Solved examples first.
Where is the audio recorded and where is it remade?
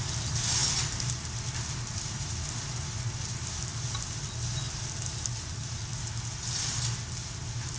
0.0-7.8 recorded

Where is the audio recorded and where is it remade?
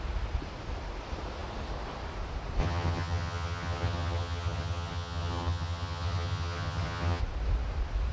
0.0-2.6 recorded; 2.6-7.2 remade; 7.2-8.1 recorded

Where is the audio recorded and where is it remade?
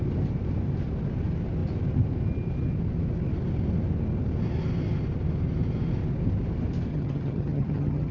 0.0-6.9 recorded; 6.9-8.1 remade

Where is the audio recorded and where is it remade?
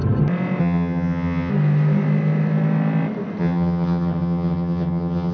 0.0-0.6 recorded; 0.6-1.5 remade; 1.5-3.4 recorded; 3.4-5.3 remade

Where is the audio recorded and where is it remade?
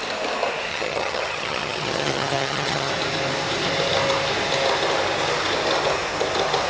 0.0-0.7 recorded; 0.7-2.9 remade; 2.9-6.7 recorded